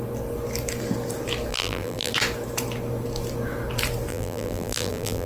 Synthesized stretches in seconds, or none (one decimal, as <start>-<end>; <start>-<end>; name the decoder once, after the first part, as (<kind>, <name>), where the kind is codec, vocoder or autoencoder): 1.5-2.1 (vocoder, BigVGAN v2); 4.1-5.3